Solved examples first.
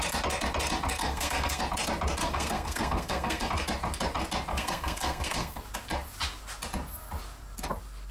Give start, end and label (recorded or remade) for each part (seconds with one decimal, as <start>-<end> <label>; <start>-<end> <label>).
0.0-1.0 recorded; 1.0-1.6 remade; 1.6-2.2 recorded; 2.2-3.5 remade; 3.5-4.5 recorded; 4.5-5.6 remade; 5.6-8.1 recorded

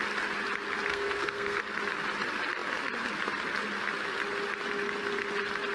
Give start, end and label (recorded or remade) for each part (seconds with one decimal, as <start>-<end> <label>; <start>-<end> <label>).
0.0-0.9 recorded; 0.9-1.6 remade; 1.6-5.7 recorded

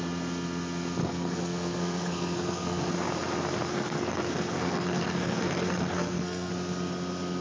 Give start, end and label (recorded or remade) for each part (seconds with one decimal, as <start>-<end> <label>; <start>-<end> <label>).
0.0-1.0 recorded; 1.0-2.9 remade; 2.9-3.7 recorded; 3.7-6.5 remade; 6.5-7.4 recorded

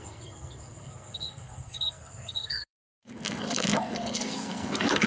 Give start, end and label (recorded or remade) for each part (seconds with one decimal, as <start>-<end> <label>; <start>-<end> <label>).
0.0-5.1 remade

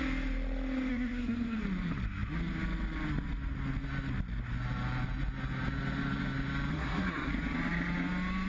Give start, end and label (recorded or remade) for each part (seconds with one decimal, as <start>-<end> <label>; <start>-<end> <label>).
0.0-0.9 recorded; 0.9-1.6 remade; 1.6-6.7 recorded; 6.7-7.3 remade; 7.3-8.5 recorded